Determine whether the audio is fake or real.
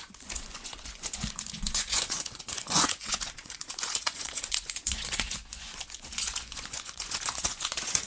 fake